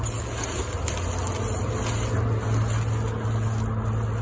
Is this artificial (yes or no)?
no